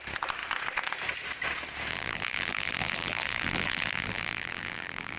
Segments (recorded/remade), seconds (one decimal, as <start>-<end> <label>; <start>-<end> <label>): 0.0-1.9 recorded; 1.9-5.2 remade